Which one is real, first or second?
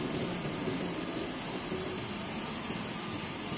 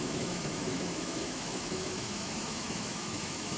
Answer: first